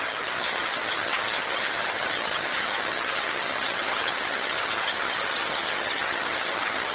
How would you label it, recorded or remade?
remade